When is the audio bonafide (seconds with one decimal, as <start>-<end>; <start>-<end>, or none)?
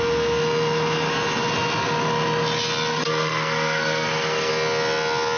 0.0-2.9; 4.5-5.4